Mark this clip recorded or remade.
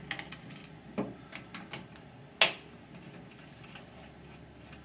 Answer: recorded